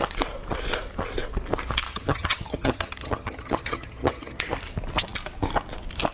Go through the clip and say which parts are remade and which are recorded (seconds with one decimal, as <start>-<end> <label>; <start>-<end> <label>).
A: 0.0-1.9 recorded; 1.9-4.4 remade; 4.4-6.1 recorded